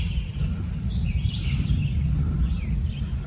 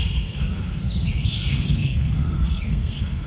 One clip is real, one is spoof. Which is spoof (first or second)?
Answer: second